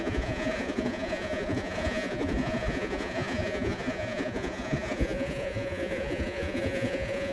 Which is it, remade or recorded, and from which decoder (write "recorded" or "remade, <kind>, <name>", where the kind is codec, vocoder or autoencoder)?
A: remade, vocoder, Vocos